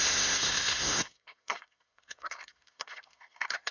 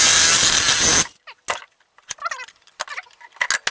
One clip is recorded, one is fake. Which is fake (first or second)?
first